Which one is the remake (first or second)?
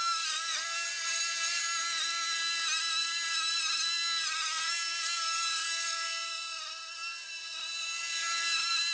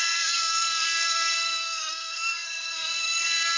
second